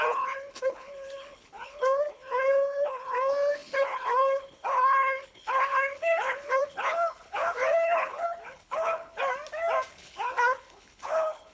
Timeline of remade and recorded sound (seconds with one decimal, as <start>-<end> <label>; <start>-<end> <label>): 0.0-9.2 remade; 9.2-9.9 recorded; 9.9-11.5 remade